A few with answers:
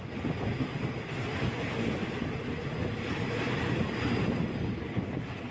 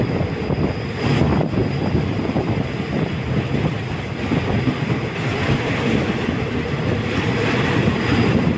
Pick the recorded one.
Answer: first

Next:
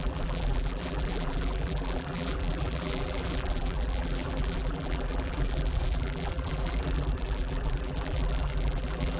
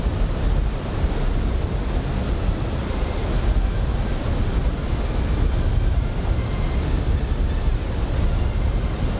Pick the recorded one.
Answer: second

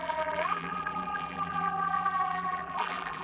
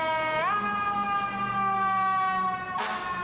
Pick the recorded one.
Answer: second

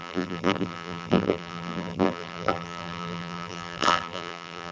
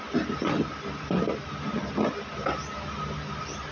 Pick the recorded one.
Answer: second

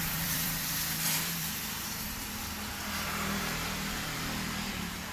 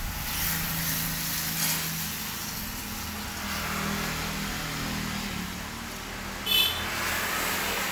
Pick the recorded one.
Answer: second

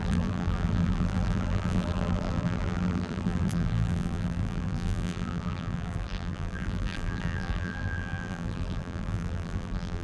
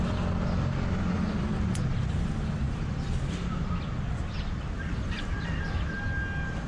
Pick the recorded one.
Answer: second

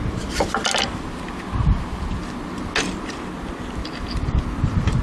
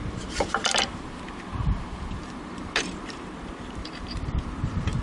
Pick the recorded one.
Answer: first